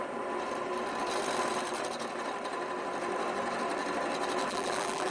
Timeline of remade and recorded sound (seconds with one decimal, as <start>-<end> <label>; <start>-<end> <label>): 0.0-4.4 recorded; 4.4-5.1 remade